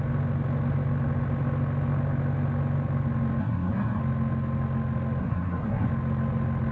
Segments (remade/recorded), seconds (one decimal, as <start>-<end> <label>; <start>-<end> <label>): 0.0-3.4 recorded; 3.4-4.0 remade; 4.0-5.2 recorded; 5.2-5.9 remade; 5.9-6.7 recorded